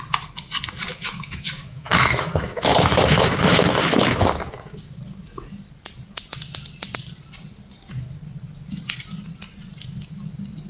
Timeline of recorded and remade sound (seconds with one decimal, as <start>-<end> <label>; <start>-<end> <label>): 0.0-0.9 recorded; 0.9-5.0 remade; 5.0-10.7 recorded